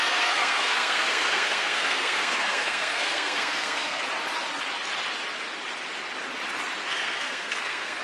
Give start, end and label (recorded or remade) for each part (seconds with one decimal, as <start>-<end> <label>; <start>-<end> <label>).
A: 0.0-4.0 remade; 4.0-6.8 recorded; 6.8-8.0 remade